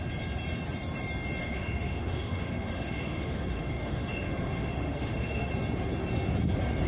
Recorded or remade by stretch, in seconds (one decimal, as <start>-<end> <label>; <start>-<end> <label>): 0.0-1.4 recorded; 1.4-5.5 remade; 5.5-6.9 recorded